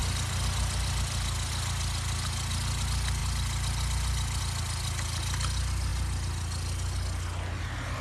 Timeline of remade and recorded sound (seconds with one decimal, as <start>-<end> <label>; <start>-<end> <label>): 0.0-8.0 recorded